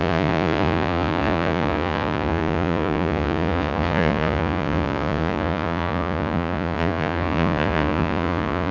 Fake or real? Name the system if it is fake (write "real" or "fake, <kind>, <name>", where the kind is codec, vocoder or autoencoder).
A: fake, vocoder, Vocos